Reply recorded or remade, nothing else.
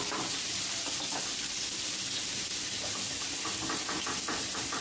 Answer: remade